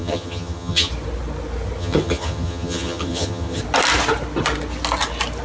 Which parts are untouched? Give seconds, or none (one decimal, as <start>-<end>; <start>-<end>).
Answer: 0.9-1.8; 3.6-5.4